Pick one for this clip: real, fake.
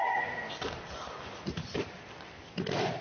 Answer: real